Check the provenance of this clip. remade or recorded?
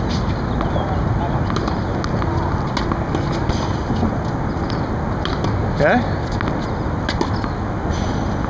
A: recorded